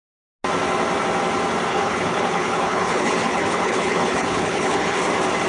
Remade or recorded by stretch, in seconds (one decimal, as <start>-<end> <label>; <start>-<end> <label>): 0.0-1.7 recorded; 1.7-5.0 remade; 5.0-5.5 recorded